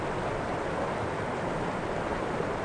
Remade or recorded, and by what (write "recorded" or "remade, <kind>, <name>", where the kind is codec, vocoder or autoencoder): recorded